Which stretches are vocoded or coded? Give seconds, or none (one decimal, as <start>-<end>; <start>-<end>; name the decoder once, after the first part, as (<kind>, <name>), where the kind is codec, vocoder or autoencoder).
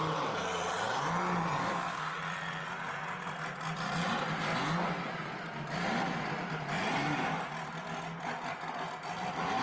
1.6-2.2 (codec, SNAC)